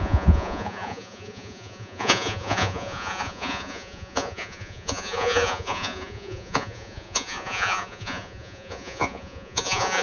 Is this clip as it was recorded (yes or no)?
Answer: no